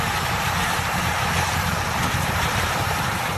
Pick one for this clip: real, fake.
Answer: fake